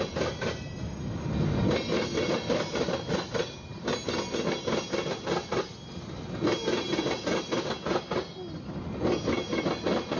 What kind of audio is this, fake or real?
real